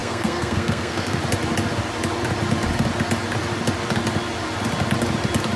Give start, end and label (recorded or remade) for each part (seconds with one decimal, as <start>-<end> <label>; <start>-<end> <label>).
0.0-1.2 remade; 1.2-5.6 recorded